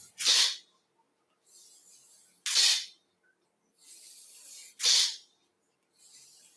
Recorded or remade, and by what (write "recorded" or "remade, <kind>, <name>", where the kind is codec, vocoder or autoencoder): recorded